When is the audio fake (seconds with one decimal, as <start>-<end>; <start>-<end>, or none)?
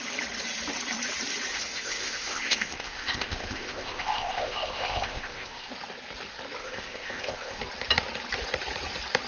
1.5-5.7; 6.6-7.6